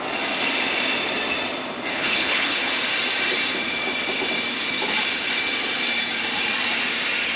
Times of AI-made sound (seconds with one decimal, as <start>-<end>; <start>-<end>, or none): 1.9-2.7